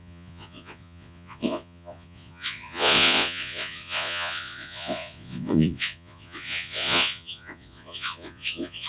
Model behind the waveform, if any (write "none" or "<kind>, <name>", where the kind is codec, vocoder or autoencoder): vocoder, Vocos